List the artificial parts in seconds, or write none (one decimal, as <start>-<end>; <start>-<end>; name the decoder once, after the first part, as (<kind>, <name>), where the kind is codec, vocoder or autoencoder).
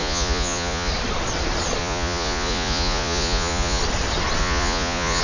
0.0-0.9 (vocoder, Vocos); 1.8-3.8; 4.4-5.2